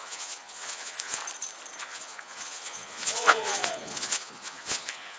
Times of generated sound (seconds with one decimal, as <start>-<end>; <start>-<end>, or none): 0.0-1.2; 1.8-5.2